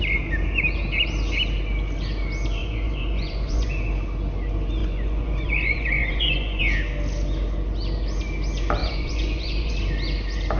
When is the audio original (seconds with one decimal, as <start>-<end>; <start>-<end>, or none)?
0.0-2.6; 3.7-4.8; 6.6-8.8; 9.7-10.6